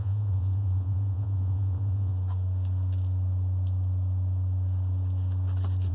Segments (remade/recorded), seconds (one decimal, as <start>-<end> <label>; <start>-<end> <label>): 0.0-2.1 remade; 2.1-5.9 recorded